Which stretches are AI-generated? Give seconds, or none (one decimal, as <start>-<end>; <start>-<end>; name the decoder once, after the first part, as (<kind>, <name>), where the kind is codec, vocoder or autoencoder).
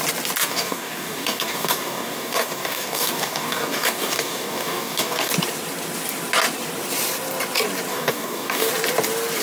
0.4-5.3 (codec, DAC); 7.9-8.7